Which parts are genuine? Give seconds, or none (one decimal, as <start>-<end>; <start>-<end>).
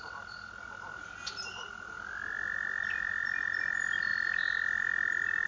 0.0-5.5